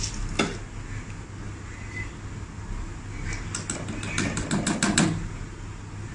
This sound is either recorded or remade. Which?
recorded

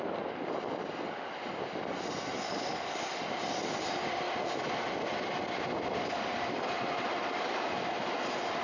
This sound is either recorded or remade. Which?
recorded